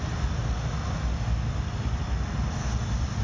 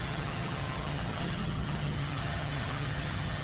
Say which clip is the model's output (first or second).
second